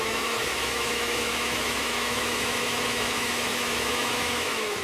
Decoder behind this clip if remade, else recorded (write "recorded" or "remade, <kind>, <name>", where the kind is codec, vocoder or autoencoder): remade, autoencoder, DAC-VAE